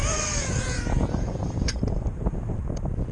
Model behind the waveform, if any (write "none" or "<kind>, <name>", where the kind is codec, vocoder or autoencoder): vocoder, BigVGAN v2